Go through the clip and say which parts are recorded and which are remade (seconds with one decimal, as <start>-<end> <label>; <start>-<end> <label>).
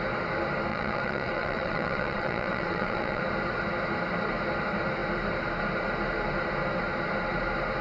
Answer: 0.0-0.7 recorded; 0.7-3.2 remade; 3.2-7.8 recorded